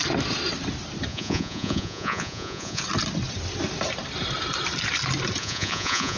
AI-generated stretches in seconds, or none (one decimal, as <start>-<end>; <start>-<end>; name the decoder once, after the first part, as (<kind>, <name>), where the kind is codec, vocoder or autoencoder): 1.1-2.8 (vocoder, Vocos); 5.4-6.2